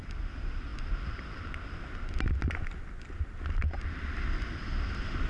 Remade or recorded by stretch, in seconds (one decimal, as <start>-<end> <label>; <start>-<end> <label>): 0.0-5.3 recorded